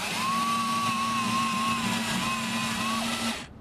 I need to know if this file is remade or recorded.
recorded